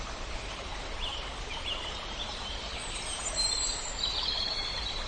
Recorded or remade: remade